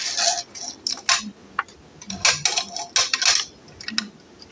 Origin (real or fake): real